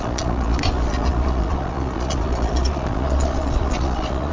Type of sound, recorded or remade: remade